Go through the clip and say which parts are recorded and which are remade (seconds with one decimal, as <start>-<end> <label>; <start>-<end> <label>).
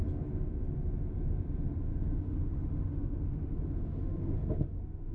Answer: 0.0-1.9 recorded; 1.9-5.1 remade